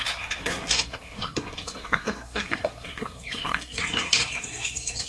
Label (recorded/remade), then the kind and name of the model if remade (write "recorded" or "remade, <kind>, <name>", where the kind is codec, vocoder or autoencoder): remade, codec, SNAC